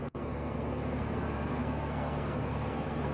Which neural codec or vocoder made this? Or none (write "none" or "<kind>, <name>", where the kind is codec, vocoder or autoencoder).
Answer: codec, SNAC